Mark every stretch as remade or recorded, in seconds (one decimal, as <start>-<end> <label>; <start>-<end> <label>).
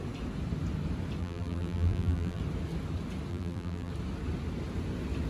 0.0-1.2 recorded; 1.2-2.4 remade; 2.4-3.3 recorded; 3.3-3.9 remade; 3.9-5.3 recorded